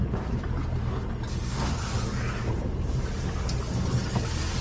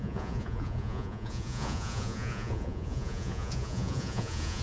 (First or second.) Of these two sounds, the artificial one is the second